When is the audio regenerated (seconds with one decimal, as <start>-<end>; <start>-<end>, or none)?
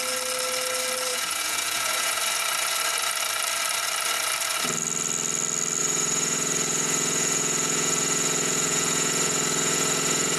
1.1-2.2; 5.8-10.4